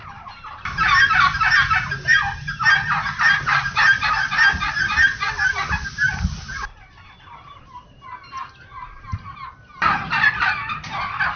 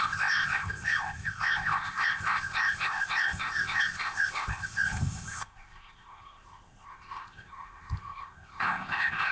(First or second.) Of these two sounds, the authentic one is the first